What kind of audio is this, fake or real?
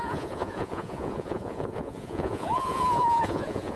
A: fake